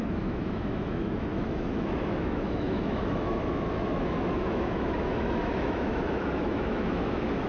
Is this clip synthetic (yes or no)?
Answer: yes